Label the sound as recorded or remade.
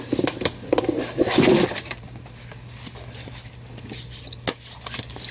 recorded